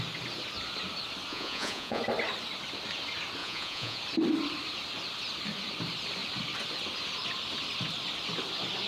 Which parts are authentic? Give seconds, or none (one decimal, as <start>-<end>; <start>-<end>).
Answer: 0.0-1.3; 2.0-3.4; 4.0-8.9